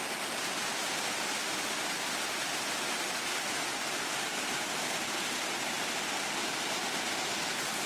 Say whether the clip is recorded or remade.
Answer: recorded